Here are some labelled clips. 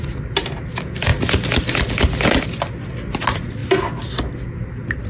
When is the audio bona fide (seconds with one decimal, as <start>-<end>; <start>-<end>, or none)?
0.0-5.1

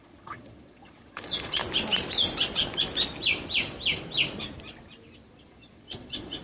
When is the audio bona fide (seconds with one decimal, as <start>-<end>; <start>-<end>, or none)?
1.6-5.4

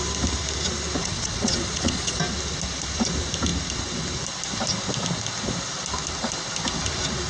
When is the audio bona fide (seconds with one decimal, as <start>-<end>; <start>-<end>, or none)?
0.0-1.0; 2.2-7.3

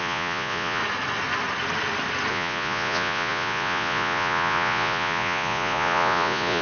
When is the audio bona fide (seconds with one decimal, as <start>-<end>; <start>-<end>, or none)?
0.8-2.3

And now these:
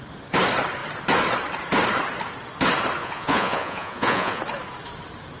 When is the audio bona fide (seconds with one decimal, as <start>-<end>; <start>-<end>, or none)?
0.0-3.0; 4.4-5.4